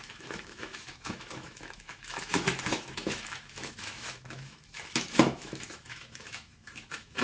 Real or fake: fake